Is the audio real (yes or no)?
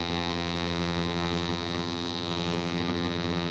no